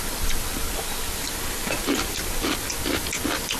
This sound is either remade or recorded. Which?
recorded